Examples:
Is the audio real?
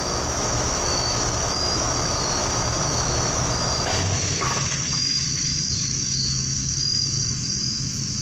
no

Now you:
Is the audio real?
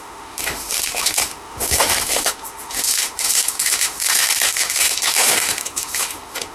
no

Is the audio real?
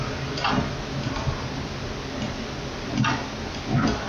yes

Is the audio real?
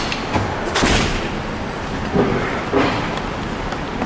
yes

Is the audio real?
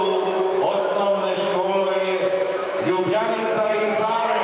no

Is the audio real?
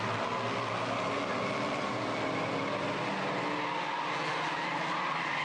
yes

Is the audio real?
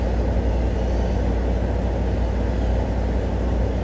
yes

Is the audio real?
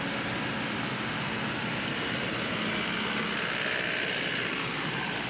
yes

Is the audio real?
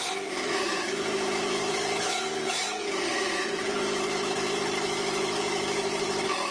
no